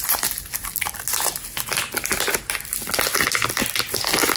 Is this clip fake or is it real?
real